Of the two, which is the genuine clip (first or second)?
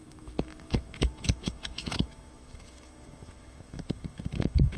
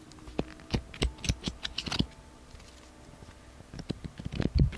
second